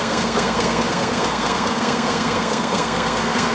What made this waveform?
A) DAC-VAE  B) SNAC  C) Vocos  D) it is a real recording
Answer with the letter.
B